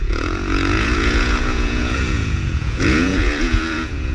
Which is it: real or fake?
fake